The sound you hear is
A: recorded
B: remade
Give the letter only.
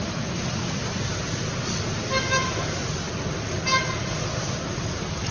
A